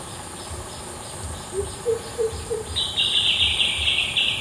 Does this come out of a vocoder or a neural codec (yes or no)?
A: no